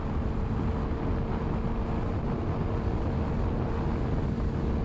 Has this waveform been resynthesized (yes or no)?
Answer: no